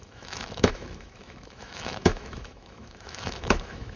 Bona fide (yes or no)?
no